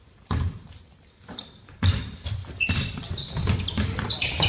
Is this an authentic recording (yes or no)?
yes